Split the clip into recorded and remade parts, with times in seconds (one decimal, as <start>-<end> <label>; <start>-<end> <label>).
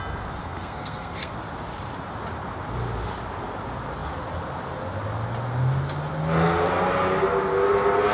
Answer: 0.0-0.4 recorded; 0.4-1.3 remade; 1.3-8.1 recorded